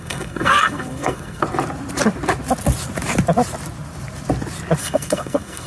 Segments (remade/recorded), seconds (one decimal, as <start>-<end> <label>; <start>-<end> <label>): 0.0-1.4 remade; 1.4-4.8 recorded; 4.8-5.7 remade